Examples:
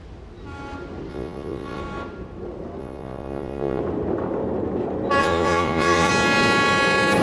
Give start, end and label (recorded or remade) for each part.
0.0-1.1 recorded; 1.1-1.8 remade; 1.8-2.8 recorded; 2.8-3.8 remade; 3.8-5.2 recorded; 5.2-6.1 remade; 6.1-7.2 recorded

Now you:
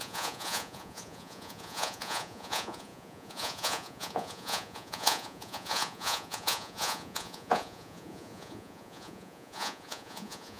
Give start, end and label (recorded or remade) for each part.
0.0-10.6 remade

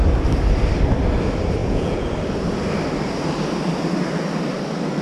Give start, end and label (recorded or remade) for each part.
0.0-1.6 recorded; 1.6-2.1 remade; 2.1-5.0 recorded

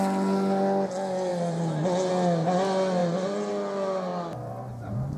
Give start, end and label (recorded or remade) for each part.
0.0-5.2 recorded

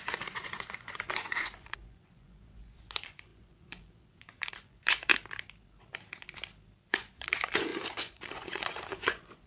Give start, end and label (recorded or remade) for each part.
0.0-5.1 remade; 5.1-6.9 recorded; 6.9-9.5 remade

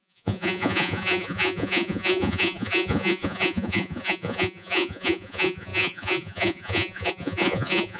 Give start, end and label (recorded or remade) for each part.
0.0-8.0 remade

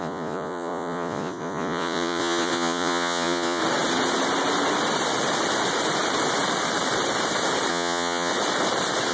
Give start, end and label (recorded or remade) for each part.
0.0-3.6 remade; 3.6-7.7 recorded; 7.7-8.3 remade; 8.3-9.1 recorded